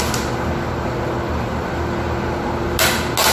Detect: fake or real real